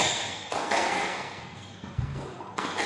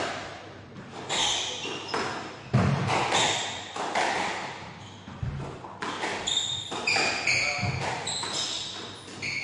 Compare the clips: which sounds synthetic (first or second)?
first